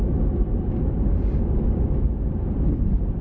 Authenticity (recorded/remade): recorded